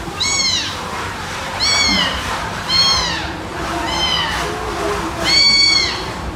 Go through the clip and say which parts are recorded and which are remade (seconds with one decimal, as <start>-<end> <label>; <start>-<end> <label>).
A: 0.0-1.4 remade; 1.4-2.3 recorded; 2.3-3.7 remade; 3.7-5.0 recorded; 5.0-6.4 remade